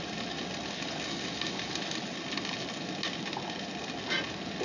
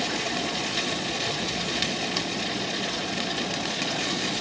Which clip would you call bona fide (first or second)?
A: first